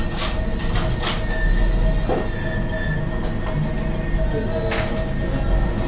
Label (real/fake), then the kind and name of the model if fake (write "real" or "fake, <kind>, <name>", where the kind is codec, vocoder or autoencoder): real